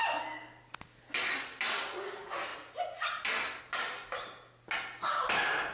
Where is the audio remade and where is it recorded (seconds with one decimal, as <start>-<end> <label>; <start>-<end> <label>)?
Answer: 0.0-5.7 recorded